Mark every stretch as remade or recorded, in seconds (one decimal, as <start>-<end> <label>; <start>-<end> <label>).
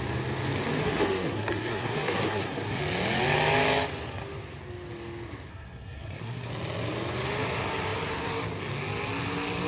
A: 0.0-0.8 recorded; 0.8-2.8 remade; 2.8-5.5 recorded; 5.5-6.5 remade; 6.5-9.7 recorded